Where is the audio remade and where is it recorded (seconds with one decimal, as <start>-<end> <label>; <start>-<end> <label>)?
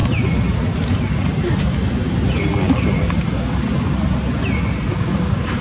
0.0-4.9 recorded; 4.9-5.6 remade